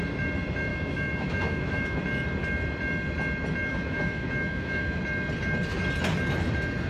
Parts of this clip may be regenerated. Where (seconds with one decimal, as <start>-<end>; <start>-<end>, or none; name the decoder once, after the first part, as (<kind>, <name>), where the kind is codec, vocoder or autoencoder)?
0.7-2.0 (autoencoder, DAC-VAE); 3.7-5.0